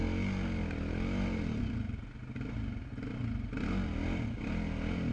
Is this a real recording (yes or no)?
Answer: yes